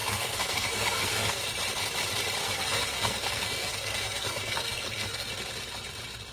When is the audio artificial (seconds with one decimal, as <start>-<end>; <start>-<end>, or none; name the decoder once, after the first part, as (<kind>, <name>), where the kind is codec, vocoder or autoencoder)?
0.0-1.4 (codec, SNAC); 2.4-5.3